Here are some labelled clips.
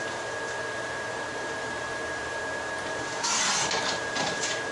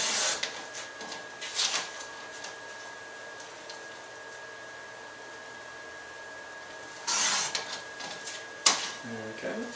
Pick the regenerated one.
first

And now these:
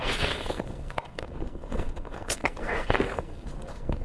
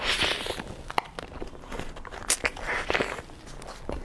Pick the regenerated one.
first